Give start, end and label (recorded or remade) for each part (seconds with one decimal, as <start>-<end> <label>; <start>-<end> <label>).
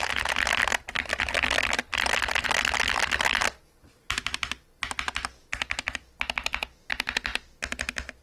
0.0-8.2 recorded